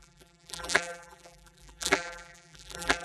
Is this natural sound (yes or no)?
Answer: no